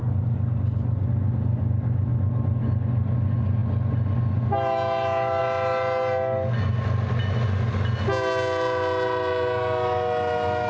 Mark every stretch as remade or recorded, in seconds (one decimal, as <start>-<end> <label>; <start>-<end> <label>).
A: 0.0-10.7 recorded